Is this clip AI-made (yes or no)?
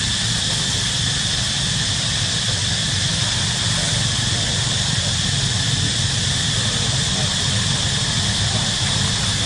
no